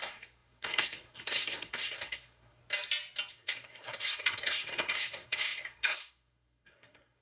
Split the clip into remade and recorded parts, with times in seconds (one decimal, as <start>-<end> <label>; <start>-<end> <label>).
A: 0.0-2.6 remade; 2.6-3.3 recorded; 3.3-7.2 remade